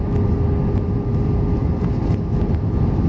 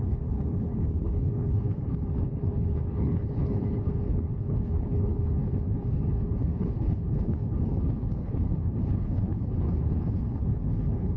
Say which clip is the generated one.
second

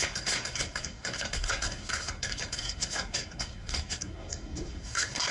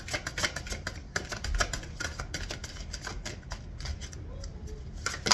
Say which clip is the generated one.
first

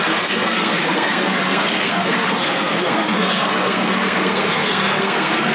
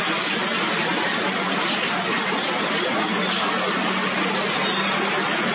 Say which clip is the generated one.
first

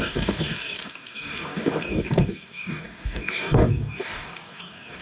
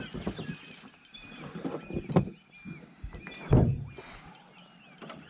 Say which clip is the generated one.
first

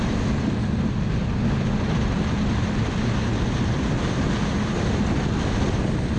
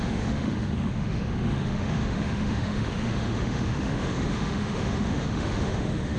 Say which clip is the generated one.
second